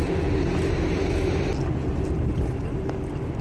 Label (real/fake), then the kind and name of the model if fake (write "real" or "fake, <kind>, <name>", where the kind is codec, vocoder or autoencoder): real